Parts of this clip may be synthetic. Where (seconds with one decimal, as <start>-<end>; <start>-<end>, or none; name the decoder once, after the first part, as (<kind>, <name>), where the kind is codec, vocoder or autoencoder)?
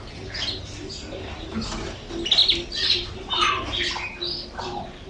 none